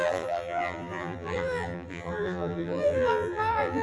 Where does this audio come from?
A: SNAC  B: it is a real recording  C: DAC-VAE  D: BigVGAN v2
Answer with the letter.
D